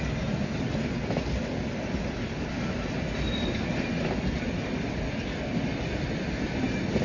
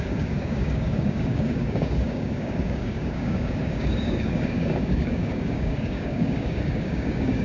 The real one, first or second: first